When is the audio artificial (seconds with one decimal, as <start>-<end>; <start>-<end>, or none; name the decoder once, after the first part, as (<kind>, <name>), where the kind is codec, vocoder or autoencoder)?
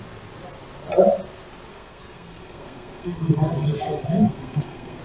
1.7-5.0 (codec, SNAC)